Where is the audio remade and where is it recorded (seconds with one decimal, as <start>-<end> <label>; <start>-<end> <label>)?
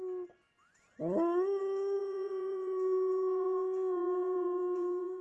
0.0-2.0 recorded; 2.0-5.2 remade